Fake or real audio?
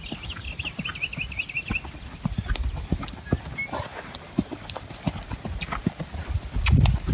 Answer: real